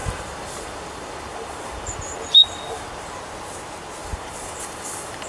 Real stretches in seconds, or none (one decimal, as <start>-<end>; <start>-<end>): 3.2-4.0